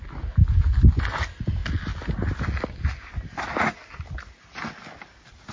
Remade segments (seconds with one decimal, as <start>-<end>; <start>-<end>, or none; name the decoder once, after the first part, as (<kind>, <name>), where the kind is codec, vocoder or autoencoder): none